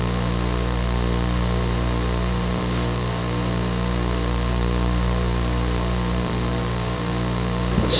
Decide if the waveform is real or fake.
fake